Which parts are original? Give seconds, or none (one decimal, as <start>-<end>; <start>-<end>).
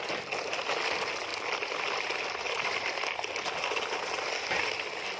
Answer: 0.0-5.2